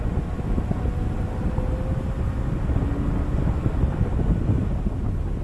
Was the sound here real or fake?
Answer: real